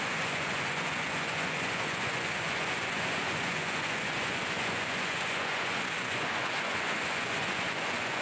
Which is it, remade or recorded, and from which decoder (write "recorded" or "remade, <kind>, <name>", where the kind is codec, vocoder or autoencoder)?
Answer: remade, vocoder, Vocos